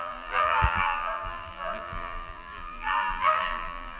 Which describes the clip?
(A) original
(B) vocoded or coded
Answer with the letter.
B